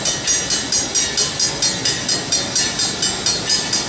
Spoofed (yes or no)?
no